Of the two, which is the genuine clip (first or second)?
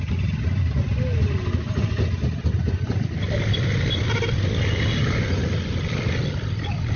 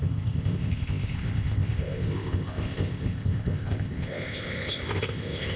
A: first